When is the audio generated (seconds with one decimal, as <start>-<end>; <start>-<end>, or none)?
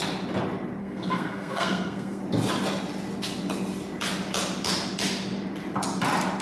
0.8-2.2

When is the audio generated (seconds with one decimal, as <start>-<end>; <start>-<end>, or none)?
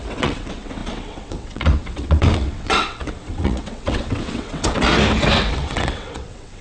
0.0-4.9; 5.5-6.6